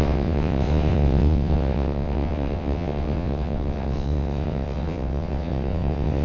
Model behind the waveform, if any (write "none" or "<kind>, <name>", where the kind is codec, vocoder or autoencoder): vocoder, WaveNeXt